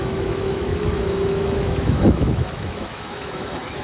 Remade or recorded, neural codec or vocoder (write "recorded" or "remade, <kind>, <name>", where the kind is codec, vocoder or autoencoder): remade, autoencoder, DAC-VAE